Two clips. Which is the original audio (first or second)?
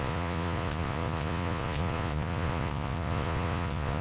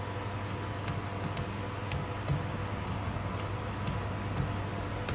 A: second